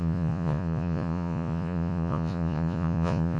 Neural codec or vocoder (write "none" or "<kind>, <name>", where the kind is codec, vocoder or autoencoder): vocoder, Vocos